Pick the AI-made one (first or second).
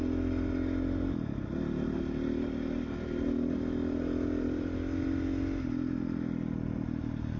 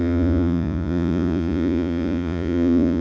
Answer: second